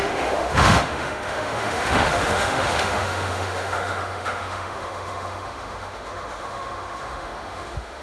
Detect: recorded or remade remade